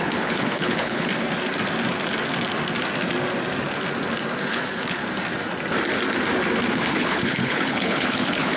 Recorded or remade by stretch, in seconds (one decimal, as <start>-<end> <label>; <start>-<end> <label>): 0.0-1.1 remade; 1.1-4.5 recorded; 4.5-5.0 remade; 5.0-6.9 recorded; 6.9-8.6 remade

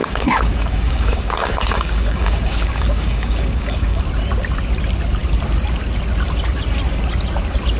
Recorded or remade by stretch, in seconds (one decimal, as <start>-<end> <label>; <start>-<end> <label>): 0.0-4.0 remade; 4.0-7.8 recorded

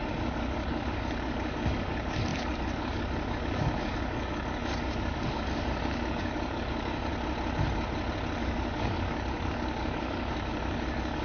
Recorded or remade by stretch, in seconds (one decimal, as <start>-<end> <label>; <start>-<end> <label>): 0.0-7.1 remade; 7.1-8.4 recorded; 8.4-11.2 remade

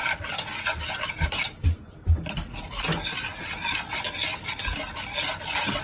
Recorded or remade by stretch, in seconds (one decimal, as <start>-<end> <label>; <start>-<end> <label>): 0.0-5.8 recorded